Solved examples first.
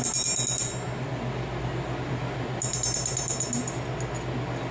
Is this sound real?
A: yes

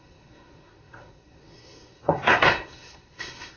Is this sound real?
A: no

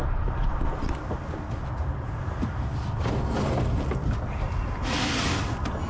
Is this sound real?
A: yes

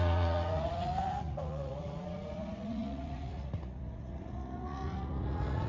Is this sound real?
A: no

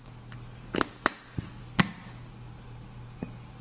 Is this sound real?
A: yes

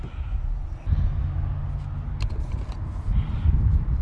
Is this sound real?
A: yes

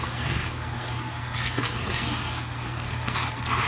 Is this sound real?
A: no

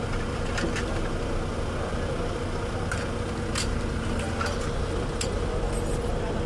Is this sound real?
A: yes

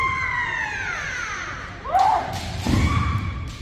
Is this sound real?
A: no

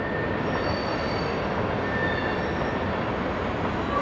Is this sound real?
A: yes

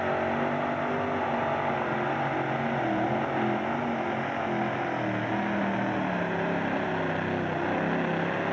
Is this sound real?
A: yes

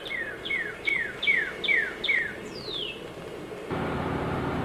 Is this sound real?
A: yes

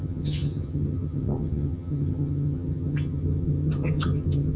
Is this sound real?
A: no